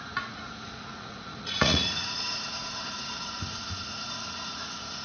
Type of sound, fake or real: fake